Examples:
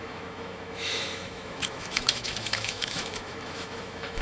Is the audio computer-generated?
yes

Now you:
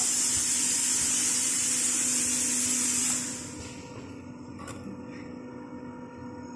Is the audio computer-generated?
no